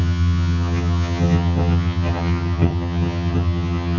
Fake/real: fake